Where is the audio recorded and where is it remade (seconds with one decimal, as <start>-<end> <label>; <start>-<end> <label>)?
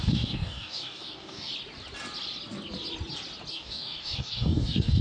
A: 0.0-1.5 remade; 1.5-3.5 recorded; 3.5-5.0 remade